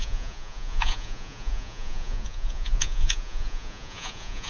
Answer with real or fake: fake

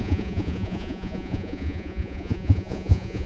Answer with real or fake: fake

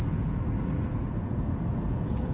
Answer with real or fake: fake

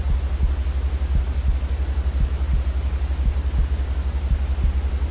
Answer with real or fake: real